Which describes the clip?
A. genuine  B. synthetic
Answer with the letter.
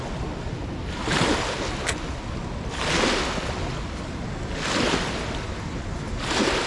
A